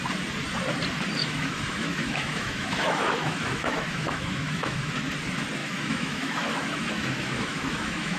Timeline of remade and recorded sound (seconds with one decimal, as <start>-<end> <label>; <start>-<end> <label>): 0.0-1.2 recorded; 1.2-4.9 remade; 4.9-5.6 recorded; 5.6-8.2 remade